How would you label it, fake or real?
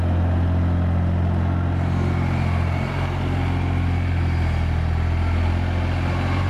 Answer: real